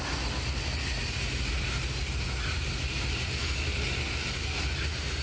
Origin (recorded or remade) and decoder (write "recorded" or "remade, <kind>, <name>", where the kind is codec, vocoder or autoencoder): recorded